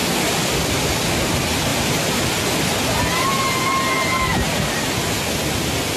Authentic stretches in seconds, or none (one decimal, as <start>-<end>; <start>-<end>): 0.7-1.7; 2.2-4.3; 4.9-6.0